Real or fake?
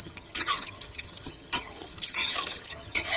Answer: fake